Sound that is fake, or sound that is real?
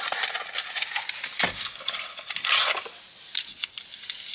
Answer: real